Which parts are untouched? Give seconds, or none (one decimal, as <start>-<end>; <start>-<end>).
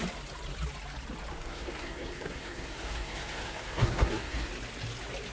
0.0-1.3; 4.5-5.3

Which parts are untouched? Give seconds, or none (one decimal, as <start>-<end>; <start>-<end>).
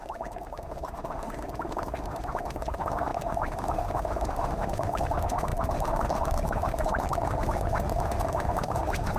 none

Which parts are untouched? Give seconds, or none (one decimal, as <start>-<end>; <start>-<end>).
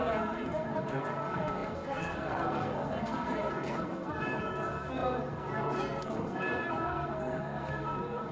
none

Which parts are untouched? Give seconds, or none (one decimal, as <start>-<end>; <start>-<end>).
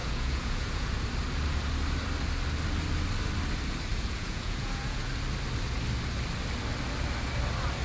0.9-3.9; 5.1-7.8